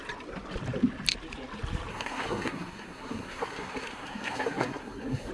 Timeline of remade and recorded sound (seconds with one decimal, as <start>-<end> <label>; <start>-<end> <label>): 0.0-1.9 recorded; 1.9-5.3 remade